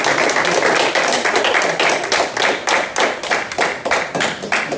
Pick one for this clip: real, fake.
real